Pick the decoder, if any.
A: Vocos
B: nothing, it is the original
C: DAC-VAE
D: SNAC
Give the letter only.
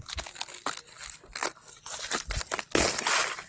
B